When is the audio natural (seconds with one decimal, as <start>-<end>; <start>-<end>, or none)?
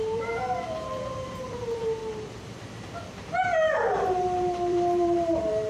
2.0-3.1